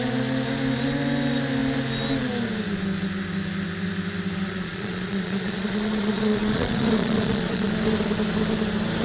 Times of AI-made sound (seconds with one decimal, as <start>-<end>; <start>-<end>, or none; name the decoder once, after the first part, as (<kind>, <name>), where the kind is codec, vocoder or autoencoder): 4.5-7.7 (vocoder, Vocos)